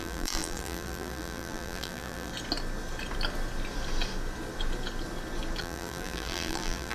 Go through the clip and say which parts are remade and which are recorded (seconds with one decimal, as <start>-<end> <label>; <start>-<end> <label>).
0.0-2.3 remade; 2.3-5.6 recorded; 5.6-6.9 remade

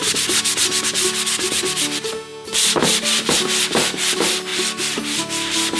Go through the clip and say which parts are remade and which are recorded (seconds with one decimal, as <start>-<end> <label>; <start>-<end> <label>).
0.0-5.8 recorded

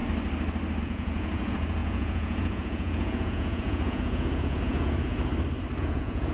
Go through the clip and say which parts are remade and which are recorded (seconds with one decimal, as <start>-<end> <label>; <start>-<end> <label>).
0.0-0.8 recorded; 0.8-5.3 remade; 5.3-5.8 recorded; 5.8-6.3 remade

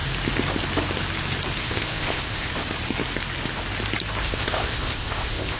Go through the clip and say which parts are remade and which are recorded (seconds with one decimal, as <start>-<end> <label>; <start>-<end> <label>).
0.0-1.6 recorded; 1.6-2.5 remade; 2.5-4.2 recorded; 4.2-5.6 remade

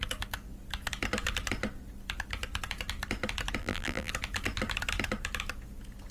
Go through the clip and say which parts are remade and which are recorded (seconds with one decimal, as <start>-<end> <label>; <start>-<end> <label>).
0.0-3.6 recorded; 3.6-4.1 remade; 4.1-6.1 recorded

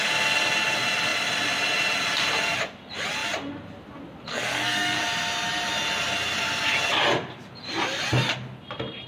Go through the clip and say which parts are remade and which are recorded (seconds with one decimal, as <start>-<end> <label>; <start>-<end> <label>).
0.0-4.3 recorded; 4.3-5.0 remade; 5.0-9.1 recorded

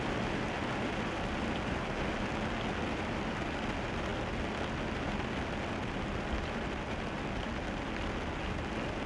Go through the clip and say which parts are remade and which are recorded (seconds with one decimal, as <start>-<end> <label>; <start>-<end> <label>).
0.0-9.1 recorded

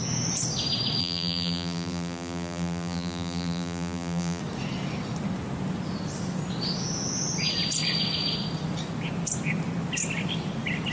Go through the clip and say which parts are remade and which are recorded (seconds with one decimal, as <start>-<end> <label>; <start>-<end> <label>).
0.0-1.0 recorded; 1.0-4.4 remade; 4.4-10.9 recorded